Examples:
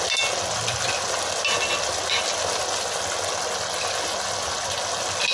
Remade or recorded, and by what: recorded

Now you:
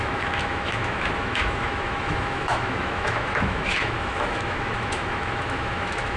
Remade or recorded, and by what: remade, autoencoder, DAC-VAE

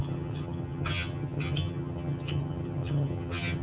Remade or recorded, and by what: remade, vocoder, HiFi-GAN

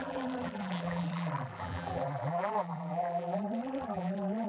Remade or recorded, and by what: remade, vocoder, BigVGAN v2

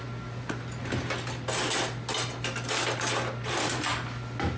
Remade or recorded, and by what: recorded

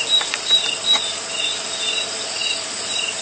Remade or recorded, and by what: recorded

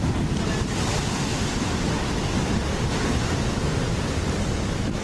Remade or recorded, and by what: recorded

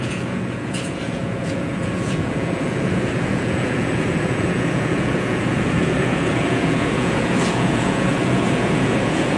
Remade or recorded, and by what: remade, vocoder, Vocos